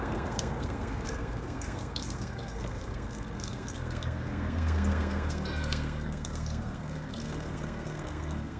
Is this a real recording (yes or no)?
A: no